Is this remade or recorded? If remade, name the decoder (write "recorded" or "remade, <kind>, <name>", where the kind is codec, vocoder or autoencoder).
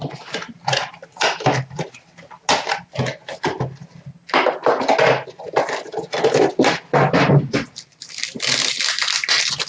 recorded